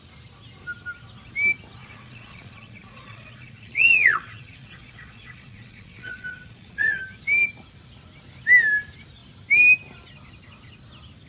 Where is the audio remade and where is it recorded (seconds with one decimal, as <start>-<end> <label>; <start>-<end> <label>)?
0.0-1.8 recorded; 1.8-7.0 remade; 7.0-11.3 recorded